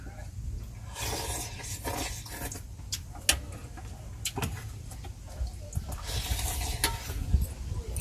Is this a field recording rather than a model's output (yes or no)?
yes